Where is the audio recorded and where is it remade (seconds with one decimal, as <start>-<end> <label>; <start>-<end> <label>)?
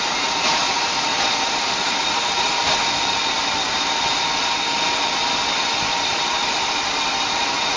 0.0-1.1 remade; 1.1-1.7 recorded; 1.7-2.6 remade; 2.6-7.3 recorded; 7.3-7.8 remade